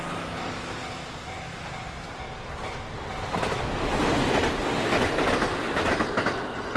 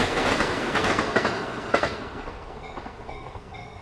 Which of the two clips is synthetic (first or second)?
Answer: second